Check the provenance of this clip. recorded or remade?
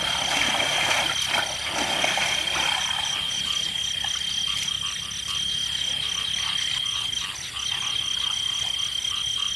recorded